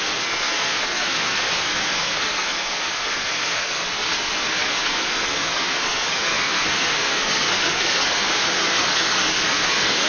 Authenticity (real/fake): fake